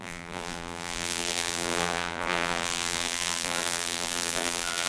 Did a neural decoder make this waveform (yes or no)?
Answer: yes